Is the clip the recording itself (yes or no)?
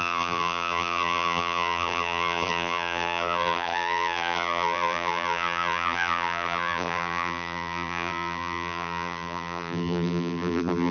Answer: no